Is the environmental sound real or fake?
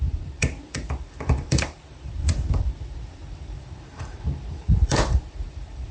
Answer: fake